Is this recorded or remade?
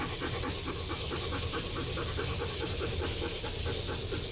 recorded